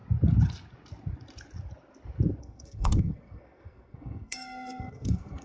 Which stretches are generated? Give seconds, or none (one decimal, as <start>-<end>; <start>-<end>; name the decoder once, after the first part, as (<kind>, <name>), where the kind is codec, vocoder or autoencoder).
2.4-5.4 (codec, SNAC)